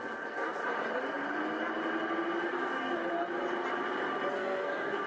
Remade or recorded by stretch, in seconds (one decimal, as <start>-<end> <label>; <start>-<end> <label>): 0.0-0.6 remade; 0.6-2.5 recorded; 2.5-3.0 remade; 3.0-4.3 recorded; 4.3-5.1 remade